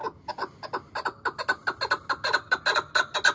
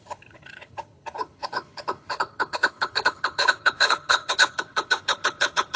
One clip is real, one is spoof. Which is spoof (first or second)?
second